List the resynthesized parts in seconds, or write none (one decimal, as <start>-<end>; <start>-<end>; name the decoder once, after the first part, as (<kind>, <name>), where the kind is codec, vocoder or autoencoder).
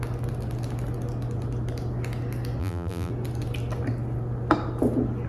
2.6-3.1 (vocoder, BigVGAN v2)